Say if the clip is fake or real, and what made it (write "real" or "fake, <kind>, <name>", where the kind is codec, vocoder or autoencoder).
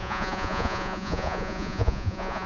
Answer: fake, vocoder, Vocos